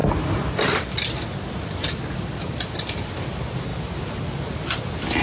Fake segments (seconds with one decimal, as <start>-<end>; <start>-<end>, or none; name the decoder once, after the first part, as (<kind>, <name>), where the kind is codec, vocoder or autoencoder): none